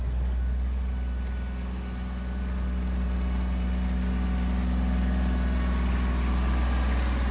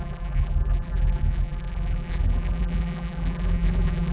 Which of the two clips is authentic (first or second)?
first